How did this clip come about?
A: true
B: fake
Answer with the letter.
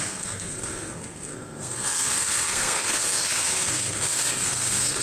B